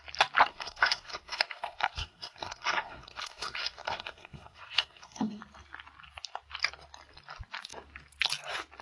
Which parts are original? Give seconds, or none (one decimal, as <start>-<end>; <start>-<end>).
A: 0.0-0.5; 5.4-8.8